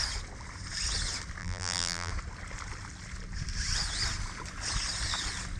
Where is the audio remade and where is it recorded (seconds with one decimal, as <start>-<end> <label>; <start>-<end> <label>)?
0.0-1.4 recorded; 1.4-2.1 remade; 2.1-5.6 recorded